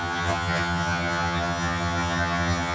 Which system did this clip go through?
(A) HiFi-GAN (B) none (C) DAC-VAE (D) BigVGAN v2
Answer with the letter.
A